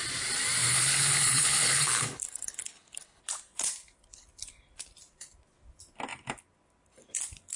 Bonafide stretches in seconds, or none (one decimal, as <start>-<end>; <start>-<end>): 0.0-0.6; 3.2-7.6